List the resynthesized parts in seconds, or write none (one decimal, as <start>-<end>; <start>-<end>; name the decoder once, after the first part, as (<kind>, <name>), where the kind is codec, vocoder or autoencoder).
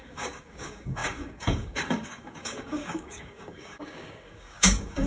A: 0.0-5.1 (codec, DAC)